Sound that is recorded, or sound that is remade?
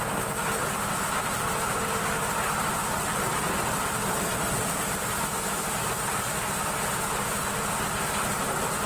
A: recorded